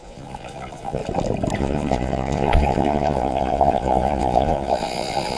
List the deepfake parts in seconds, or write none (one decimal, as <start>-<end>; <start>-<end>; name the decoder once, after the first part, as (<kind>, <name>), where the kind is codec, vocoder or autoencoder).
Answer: 0.0-1.0 (vocoder, Vocos); 1.6-5.4

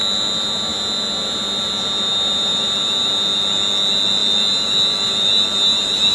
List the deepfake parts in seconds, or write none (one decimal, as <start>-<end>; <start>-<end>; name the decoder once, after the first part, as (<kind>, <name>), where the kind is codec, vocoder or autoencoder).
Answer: none

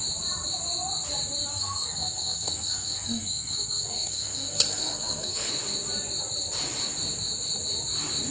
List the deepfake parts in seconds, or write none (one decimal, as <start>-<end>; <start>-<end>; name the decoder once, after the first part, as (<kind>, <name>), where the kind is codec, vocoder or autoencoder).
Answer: 1.5-5.5 (codec, SNAC)

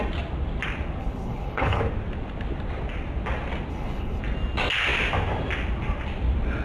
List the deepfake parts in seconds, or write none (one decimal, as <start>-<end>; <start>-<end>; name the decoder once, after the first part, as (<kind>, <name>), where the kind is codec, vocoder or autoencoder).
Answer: 1.0-1.8 (codec, HILCodec); 3.7-4.2

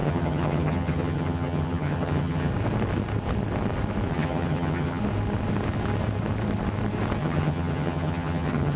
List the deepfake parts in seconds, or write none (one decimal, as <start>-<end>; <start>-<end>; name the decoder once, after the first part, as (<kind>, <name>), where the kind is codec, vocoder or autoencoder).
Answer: 0.0-2.5 (vocoder, HiFi-GAN); 4.1-5.0; 7.2-8.8

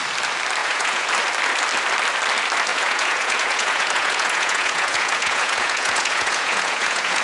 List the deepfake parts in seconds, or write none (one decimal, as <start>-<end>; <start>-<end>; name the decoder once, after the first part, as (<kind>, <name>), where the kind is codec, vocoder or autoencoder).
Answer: 0.6-1.1 (vocoder, Vocos); 2.7-7.2

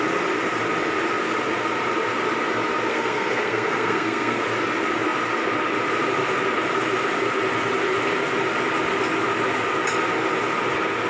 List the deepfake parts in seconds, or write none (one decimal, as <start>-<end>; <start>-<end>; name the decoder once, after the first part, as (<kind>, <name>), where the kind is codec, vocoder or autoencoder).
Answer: 2.9-4.4 (codec, SNAC)